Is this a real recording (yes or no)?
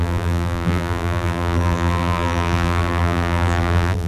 no